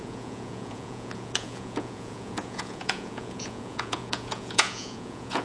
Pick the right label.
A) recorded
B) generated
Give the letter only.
B